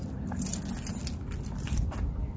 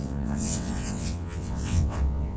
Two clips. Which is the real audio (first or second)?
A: first